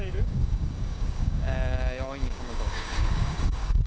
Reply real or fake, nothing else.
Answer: fake